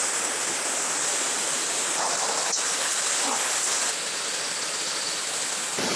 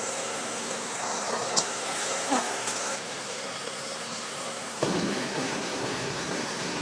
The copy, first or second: second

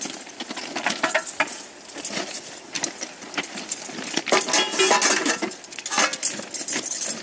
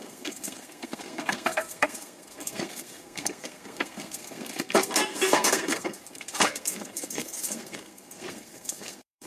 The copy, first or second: second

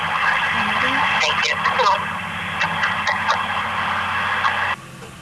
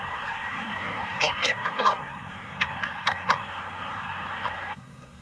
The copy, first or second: second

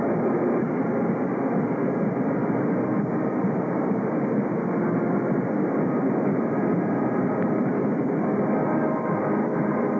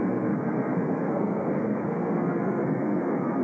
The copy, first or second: second